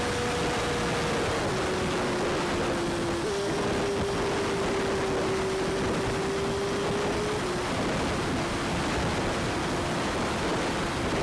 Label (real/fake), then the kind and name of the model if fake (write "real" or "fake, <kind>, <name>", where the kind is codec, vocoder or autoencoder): real